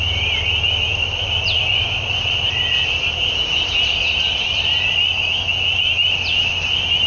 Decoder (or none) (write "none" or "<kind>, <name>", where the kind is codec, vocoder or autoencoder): none